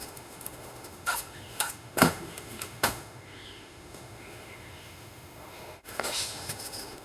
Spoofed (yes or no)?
yes